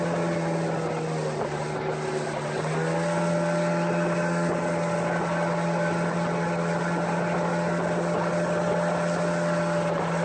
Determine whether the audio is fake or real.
real